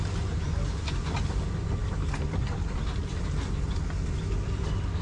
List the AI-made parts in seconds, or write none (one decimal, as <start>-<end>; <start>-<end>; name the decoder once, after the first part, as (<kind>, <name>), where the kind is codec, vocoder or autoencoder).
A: none